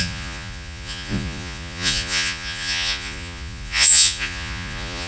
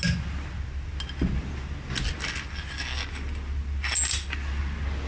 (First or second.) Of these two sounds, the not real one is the first